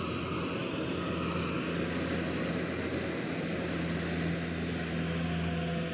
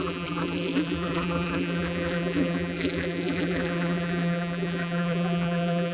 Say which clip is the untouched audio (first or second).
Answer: first